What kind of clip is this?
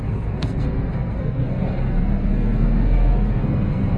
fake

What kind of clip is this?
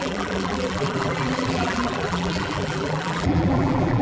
fake